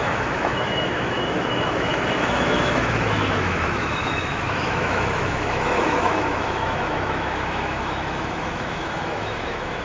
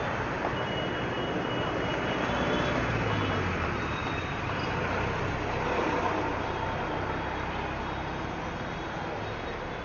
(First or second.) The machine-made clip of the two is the first